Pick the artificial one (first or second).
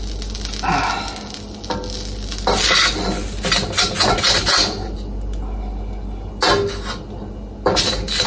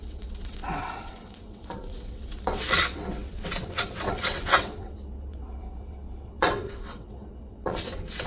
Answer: second